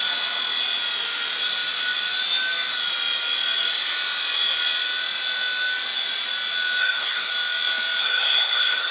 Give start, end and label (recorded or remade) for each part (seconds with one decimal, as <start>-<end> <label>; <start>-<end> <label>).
0.0-6.8 recorded; 6.8-7.3 remade; 7.3-8.0 recorded; 8.0-8.9 remade